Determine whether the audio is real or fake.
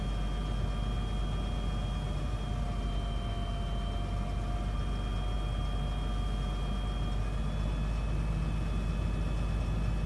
real